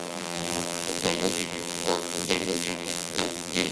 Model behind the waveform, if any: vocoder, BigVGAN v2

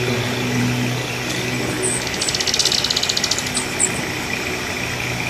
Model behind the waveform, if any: none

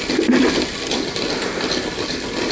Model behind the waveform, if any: none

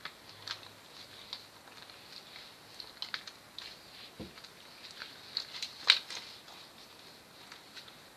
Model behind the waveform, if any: none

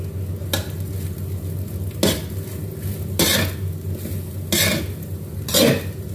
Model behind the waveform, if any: none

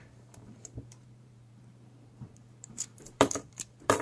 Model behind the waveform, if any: vocoder, BigVGAN v2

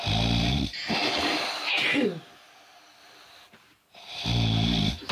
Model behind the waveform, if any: none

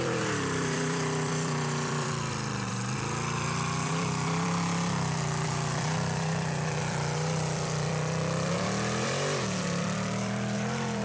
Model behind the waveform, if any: vocoder, BigVGAN v2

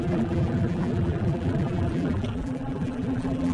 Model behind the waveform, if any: vocoder, BigVGAN v2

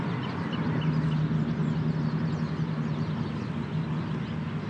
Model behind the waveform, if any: none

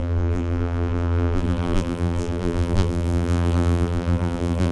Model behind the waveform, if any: vocoder, BigVGAN v2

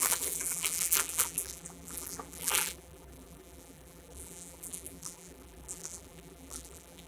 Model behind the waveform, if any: vocoder, BigVGAN v2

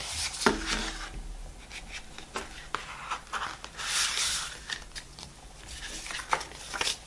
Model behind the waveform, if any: none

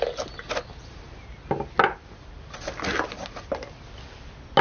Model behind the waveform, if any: none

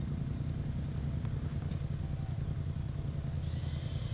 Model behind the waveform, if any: none